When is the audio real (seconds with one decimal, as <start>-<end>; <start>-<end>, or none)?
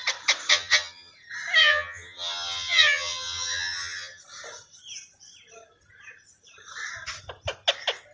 0.0-0.5; 1.1-1.6; 4.2-8.1